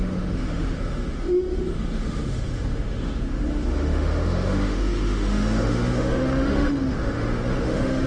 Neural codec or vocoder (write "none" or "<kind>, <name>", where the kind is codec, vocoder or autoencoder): autoencoder, DAC-VAE